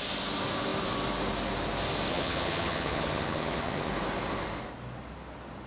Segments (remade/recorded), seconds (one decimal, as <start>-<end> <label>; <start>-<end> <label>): 0.0-2.1 recorded; 2.1-3.9 remade; 3.9-5.7 recorded